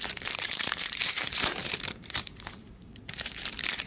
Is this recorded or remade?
remade